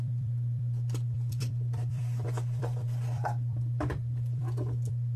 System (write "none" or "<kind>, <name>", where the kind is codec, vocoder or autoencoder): vocoder, BigVGAN v2